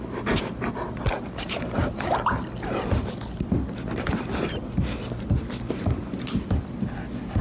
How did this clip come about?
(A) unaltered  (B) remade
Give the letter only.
A